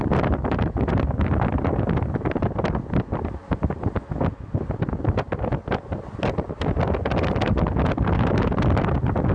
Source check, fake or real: real